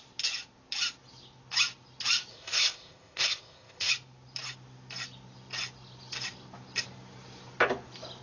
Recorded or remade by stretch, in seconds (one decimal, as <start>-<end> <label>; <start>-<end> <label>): 0.0-2.3 recorded; 2.3-3.9 remade; 3.9-8.2 recorded